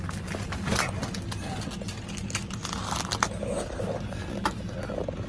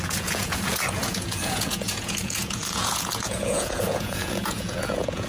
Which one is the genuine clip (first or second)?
first